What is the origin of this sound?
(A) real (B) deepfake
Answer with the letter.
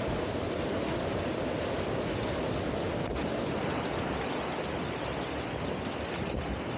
A